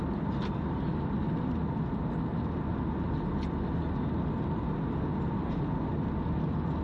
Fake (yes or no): no